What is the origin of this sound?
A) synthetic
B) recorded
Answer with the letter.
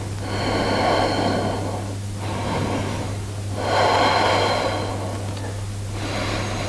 B